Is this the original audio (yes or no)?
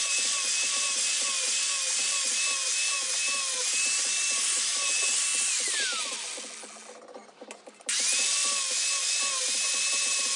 yes